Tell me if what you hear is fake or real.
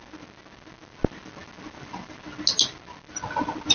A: real